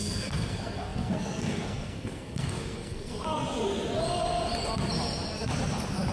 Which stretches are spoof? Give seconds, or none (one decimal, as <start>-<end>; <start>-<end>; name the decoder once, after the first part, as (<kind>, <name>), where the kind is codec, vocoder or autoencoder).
0.0-3.4 (codec, SNAC)